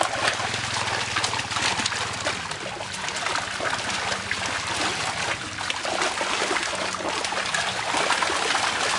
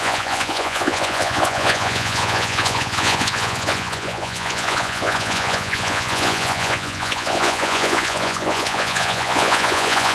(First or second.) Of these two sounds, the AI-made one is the second